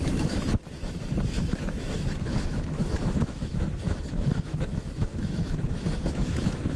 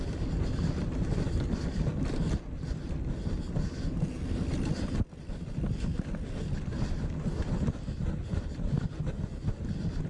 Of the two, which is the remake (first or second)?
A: first